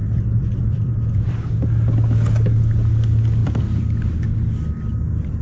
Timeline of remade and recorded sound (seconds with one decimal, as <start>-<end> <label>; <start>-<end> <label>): 0.0-1.5 remade; 1.5-3.4 recorded; 3.4-4.1 remade; 4.1-5.4 recorded